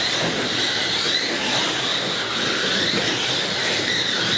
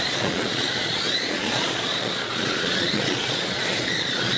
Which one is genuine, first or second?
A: first